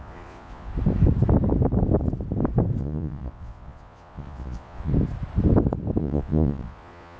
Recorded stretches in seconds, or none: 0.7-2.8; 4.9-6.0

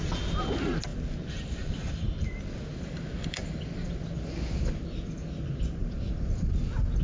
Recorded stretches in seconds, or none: 0.0-2.7; 3.9-7.0

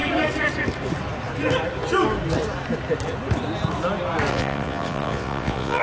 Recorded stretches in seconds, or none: 0.0-4.3